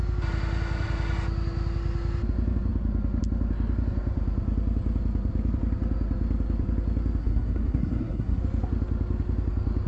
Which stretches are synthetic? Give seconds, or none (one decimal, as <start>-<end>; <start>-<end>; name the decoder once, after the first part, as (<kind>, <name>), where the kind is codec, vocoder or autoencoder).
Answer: 7.2-8.4 (codec, SNAC)